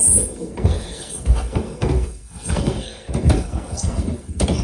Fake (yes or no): yes